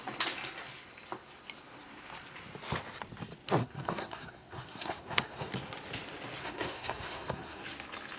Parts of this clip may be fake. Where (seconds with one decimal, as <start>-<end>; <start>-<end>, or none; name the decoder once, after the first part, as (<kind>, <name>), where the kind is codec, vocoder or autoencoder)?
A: 3.6-5.5 (codec, SNAC); 6.4-7.6